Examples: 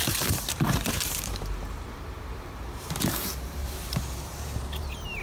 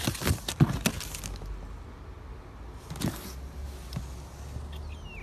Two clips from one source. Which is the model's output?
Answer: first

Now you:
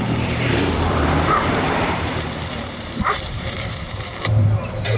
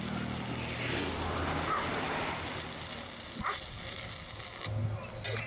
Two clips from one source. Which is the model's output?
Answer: first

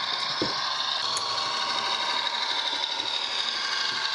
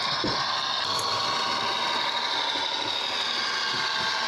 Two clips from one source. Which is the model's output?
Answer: first